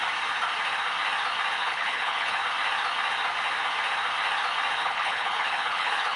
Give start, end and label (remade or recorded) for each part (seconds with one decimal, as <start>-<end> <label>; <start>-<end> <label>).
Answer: 0.0-1.6 recorded; 1.6-2.4 remade; 2.4-4.8 recorded; 4.8-6.2 remade